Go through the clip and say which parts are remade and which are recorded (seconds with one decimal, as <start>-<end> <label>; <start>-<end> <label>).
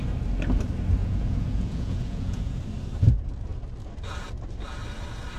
0.0-1.0 recorded; 1.0-2.6 remade; 2.6-5.4 recorded